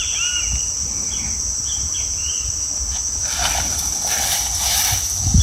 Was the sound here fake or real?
real